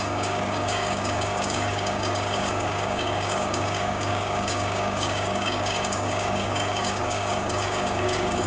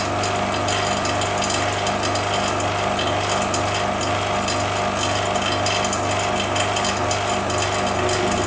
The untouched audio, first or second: second